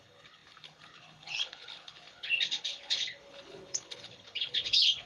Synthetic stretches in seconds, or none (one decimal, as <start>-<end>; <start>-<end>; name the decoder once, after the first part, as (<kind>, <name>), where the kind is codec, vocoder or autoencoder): 0.0-5.1 (codec, HILCodec)